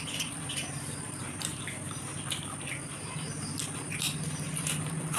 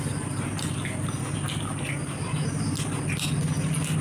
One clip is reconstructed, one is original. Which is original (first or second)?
second